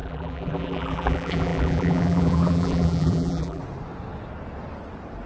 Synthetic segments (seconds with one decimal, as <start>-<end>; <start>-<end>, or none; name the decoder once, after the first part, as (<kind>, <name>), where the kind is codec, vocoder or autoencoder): 0.0-3.6 (vocoder, BigVGAN v2)